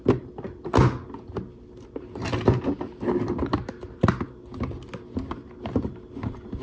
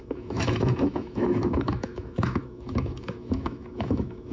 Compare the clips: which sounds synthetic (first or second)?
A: second